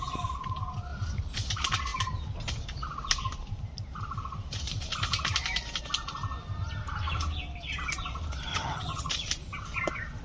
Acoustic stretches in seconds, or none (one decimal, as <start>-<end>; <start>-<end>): 0.0-8.5; 9.1-10.2